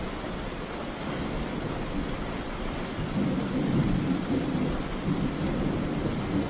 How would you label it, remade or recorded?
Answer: recorded